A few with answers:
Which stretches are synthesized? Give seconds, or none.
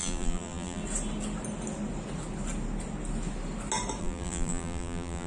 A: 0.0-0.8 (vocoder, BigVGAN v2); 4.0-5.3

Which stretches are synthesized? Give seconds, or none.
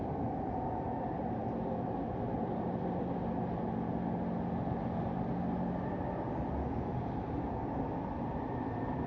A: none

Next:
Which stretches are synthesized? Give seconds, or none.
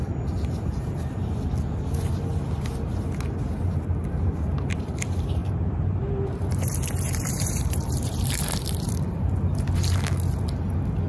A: 5.4-8.9 (vocoder, BigVGAN v2)